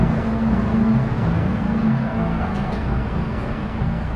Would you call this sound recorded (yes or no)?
no